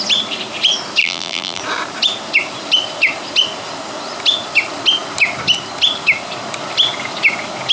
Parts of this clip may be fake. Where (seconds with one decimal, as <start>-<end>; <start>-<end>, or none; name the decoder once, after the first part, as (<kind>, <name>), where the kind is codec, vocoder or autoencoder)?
1.0-1.6 (vocoder, BigVGAN v2)